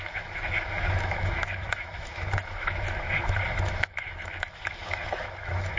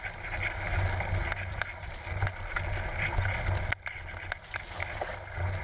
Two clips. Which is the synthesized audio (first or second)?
first